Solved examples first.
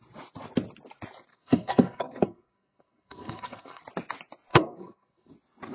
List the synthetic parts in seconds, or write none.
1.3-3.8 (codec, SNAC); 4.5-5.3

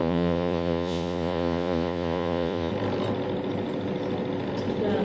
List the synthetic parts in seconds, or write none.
0.0-2.7 (vocoder, Vocos)

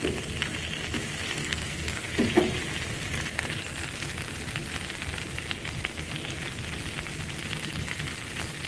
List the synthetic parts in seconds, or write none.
1.4-2.1 (codec, SNAC)

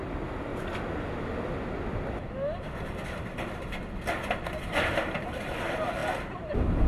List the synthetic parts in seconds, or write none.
0.0-0.5 (vocoder, BigVGAN v2); 4.6-6.0; 6.5-6.9